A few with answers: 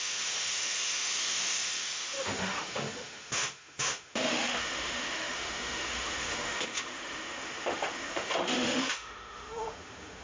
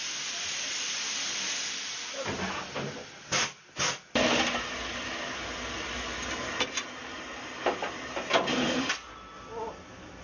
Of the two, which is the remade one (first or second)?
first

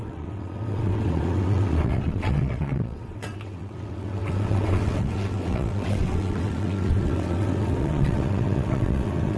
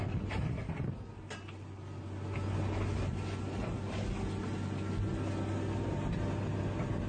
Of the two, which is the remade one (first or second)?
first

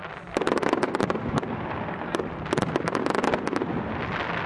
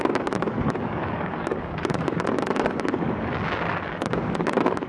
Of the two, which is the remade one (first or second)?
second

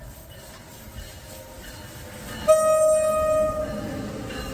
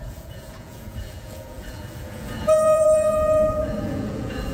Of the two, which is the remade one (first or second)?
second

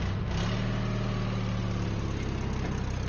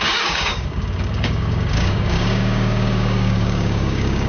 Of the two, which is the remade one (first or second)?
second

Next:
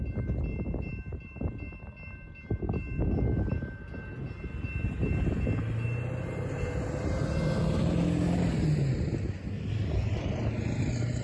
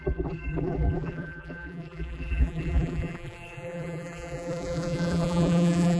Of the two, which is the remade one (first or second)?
second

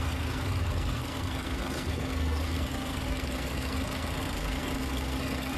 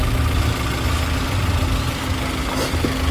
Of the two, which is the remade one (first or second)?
first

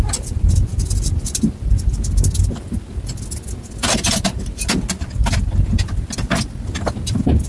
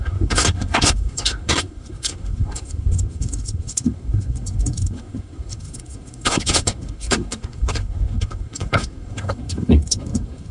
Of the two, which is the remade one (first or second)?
second